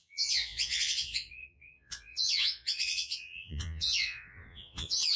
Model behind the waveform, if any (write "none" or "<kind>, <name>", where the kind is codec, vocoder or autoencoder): vocoder, Vocos